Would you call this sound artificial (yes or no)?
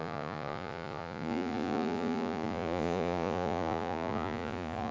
yes